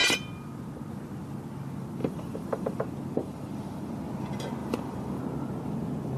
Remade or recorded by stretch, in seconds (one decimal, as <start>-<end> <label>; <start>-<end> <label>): 0.0-2.0 recorded; 2.0-2.8 remade; 2.8-3.2 recorded; 3.2-4.0 remade; 4.0-4.6 recorded; 4.6-5.2 remade; 5.2-6.2 recorded